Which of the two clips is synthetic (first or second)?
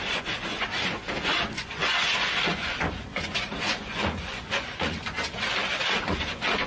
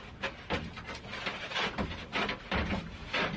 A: first